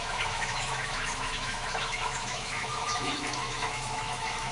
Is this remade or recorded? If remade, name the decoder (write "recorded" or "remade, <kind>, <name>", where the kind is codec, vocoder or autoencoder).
remade, autoencoder, DAC-VAE